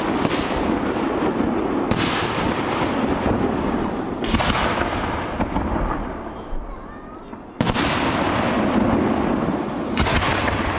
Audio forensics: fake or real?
real